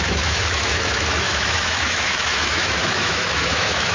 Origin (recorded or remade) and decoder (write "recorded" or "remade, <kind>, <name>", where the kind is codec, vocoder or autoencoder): remade, autoencoder, DAC-VAE